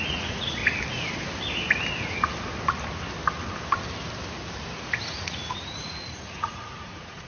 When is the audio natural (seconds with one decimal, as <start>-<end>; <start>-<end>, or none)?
0.6-5.0